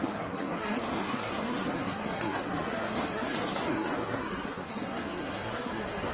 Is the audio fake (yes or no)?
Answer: yes